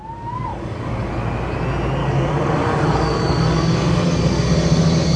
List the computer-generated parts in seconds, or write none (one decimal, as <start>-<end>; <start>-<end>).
0.5-1.1; 2.0-5.2